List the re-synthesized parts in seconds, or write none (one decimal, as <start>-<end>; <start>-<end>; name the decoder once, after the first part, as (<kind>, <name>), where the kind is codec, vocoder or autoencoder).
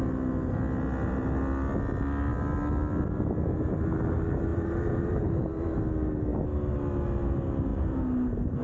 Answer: 4.5-5.8 (vocoder, BigVGAN v2); 7.7-8.6